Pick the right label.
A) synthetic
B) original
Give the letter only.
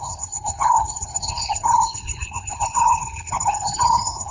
A